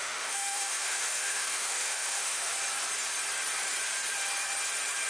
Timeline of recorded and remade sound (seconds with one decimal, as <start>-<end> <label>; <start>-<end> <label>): 0.0-2.5 remade; 2.5-5.1 recorded

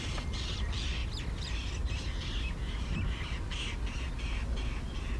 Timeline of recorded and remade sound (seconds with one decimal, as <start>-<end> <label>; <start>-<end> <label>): 0.0-5.2 recorded

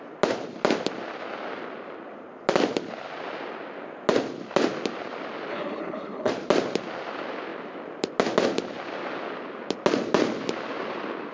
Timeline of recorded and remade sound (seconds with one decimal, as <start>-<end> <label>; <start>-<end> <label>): 0.0-5.5 recorded; 5.5-6.3 remade; 6.3-11.3 recorded

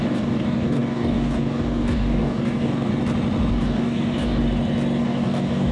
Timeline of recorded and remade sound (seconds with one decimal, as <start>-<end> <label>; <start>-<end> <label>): 0.0-2.9 remade; 2.9-3.5 recorded; 3.5-4.4 remade; 4.4-5.0 recorded; 5.0-5.7 remade

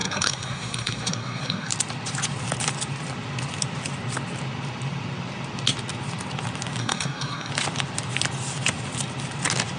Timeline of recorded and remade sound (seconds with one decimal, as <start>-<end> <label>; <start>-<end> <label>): 0.0-1.7 remade; 1.7-6.8 recorded; 6.8-7.5 remade; 7.5-9.8 recorded

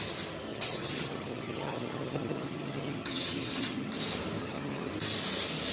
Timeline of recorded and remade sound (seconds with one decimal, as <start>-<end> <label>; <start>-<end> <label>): 0.0-0.5 recorded; 0.5-3.9 remade; 3.9-4.4 recorded; 4.4-4.9 remade; 4.9-5.7 recorded

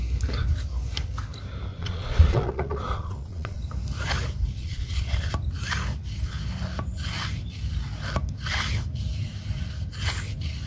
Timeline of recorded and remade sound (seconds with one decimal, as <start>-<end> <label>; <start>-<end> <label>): 0.0-1.7 recorded; 1.7-3.6 remade; 3.6-4.6 recorded; 4.6-5.3 remade; 5.3-10.7 recorded

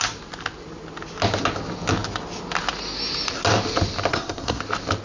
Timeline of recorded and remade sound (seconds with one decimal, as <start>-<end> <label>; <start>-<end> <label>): 0.0-4.1 recorded; 4.1-4.6 remade; 4.6-5.0 recorded